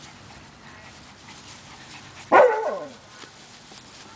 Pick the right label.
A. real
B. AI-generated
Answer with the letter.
A